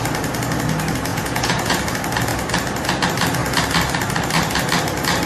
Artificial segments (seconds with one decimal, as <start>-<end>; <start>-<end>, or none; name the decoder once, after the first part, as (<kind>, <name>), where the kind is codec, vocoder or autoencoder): 1.1-1.8 (vocoder, Vocos)

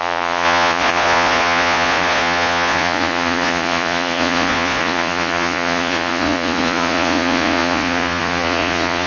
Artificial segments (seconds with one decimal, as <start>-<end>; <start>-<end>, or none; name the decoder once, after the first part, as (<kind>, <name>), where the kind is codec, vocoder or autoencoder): 0.0-9.1 (vocoder, Vocos)

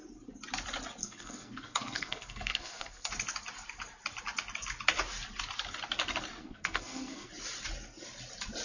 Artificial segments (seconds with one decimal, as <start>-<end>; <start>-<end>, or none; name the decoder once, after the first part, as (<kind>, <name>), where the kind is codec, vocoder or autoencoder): 1.0-3.1 (codec, SNAC); 6.4-7.3

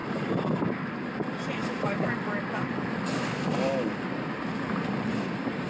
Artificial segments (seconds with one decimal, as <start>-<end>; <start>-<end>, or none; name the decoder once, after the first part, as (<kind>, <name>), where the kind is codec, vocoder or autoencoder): 0.0-0.7 (vocoder, BigVGAN v2)

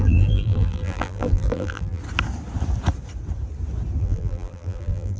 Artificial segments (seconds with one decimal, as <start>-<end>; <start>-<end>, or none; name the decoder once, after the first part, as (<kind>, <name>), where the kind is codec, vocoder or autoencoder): 0.0-2.0 (vocoder, BigVGAN v2); 4.0-5.2